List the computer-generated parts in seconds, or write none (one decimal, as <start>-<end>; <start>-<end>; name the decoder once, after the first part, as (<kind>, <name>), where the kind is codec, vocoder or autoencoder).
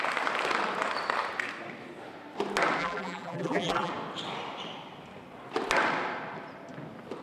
2.8-3.9 (vocoder, BigVGAN v2)